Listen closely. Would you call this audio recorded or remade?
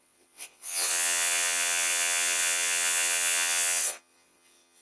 remade